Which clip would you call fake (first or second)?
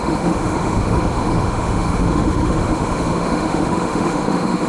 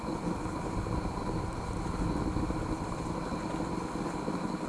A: first